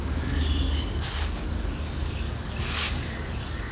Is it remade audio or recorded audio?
remade